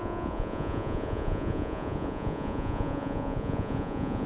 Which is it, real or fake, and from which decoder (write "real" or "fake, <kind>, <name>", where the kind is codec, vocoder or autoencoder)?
fake, vocoder, Vocos